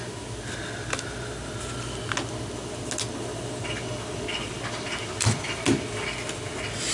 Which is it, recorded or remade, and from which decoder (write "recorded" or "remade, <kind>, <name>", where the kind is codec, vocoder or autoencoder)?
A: recorded